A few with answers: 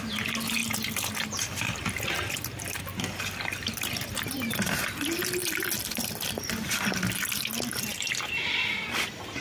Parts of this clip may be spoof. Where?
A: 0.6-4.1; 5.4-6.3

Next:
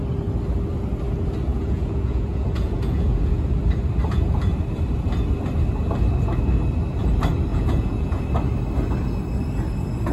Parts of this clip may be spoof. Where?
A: 1.5-3.4; 7.5-8.2

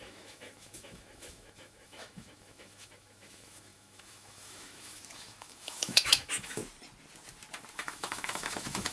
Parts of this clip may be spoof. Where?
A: 0.0-6.6; 7.7-8.9